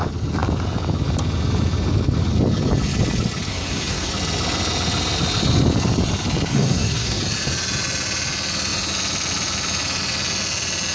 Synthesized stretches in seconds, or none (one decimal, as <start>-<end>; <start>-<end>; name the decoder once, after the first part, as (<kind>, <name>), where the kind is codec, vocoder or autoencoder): 3.5-4.1 (codec, SNAC); 6.5-7.2